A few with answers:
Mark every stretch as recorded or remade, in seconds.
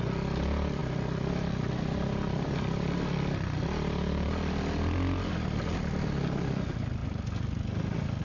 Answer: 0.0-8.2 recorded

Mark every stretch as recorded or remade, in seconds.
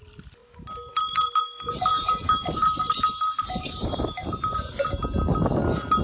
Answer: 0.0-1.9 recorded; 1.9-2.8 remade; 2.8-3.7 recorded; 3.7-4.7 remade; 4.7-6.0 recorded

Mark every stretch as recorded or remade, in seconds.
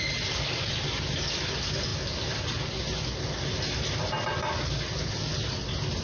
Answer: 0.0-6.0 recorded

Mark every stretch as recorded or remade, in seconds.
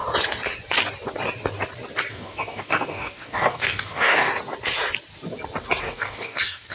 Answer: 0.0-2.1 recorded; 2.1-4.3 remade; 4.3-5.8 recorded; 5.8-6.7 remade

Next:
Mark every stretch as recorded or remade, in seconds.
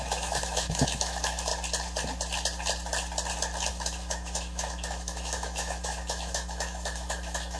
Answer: 0.0-1.5 remade; 1.5-3.7 recorded; 3.7-7.6 remade